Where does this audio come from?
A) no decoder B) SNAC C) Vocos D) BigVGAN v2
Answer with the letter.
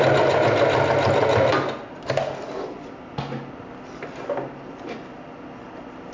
A